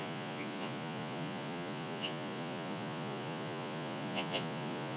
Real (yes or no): no